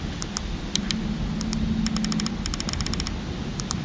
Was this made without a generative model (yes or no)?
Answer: yes